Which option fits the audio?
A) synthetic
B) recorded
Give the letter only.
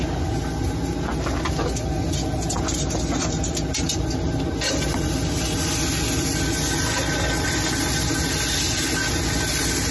B